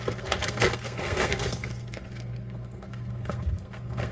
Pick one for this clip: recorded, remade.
remade